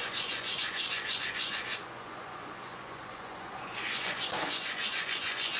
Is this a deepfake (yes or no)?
yes